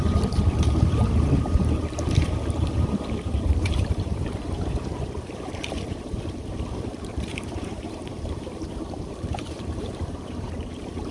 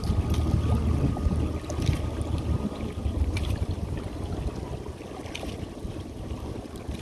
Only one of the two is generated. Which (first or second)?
first